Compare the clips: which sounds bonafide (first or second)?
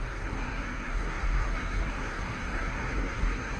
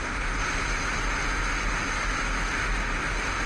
second